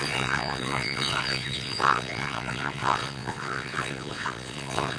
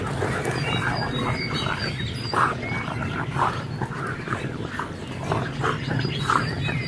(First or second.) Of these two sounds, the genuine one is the second